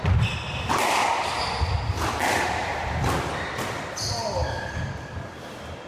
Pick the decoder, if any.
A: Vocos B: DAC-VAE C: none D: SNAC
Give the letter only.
C